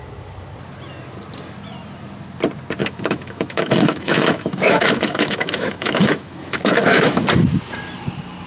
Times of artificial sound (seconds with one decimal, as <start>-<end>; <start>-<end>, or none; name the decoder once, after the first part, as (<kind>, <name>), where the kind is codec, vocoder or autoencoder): 2.8-7.2 (autoencoder, DAC-VAE)